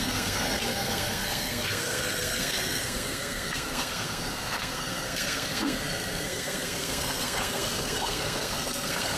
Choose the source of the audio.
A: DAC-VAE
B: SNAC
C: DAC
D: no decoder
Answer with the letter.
B